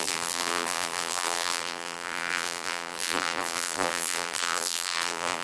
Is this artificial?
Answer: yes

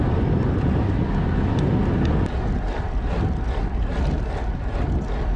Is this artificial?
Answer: no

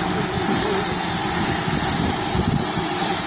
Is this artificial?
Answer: no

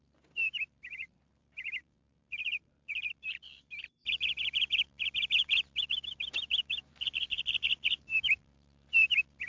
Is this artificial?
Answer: yes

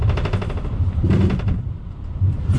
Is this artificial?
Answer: yes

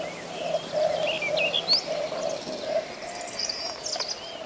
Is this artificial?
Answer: no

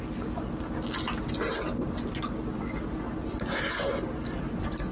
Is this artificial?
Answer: no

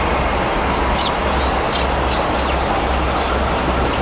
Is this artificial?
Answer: no